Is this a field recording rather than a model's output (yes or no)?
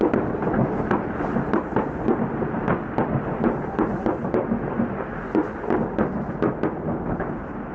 yes